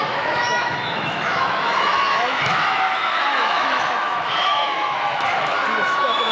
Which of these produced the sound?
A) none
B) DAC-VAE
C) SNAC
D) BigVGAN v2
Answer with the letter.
B